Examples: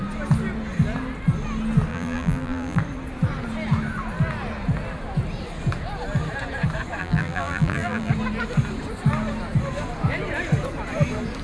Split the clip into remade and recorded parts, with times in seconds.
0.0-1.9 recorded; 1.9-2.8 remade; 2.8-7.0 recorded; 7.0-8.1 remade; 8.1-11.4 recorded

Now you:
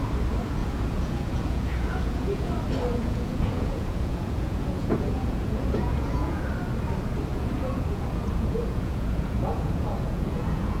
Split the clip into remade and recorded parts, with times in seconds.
0.0-0.6 recorded; 0.6-2.5 remade; 2.5-2.9 recorded; 2.9-6.5 remade; 6.5-7.3 recorded; 7.3-10.8 remade

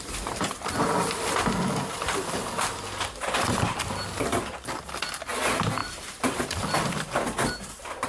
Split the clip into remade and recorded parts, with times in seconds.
0.0-8.1 recorded

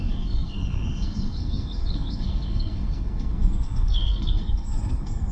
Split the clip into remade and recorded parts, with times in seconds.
0.0-5.3 remade

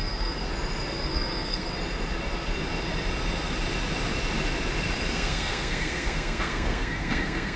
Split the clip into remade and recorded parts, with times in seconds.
0.0-0.5 remade; 0.5-1.1 recorded; 1.1-1.7 remade; 1.7-5.1 recorded; 5.1-7.6 remade

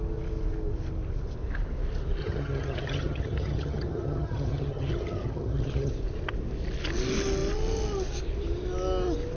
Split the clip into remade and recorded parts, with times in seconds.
0.0-2.2 recorded; 2.2-5.9 remade; 5.9-9.4 recorded

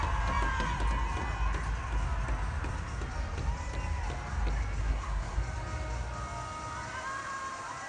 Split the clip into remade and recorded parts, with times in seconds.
0.0-4.8 recorded; 4.8-5.4 remade; 5.4-7.9 recorded

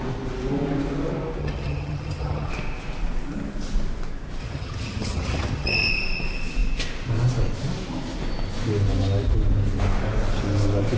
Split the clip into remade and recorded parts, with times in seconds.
0.0-1.4 recorded; 1.4-2.5 remade; 2.5-4.4 recorded; 4.4-5.9 remade; 5.9-11.0 recorded